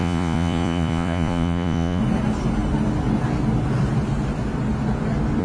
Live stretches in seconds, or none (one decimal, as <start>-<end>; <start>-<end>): 2.0-5.4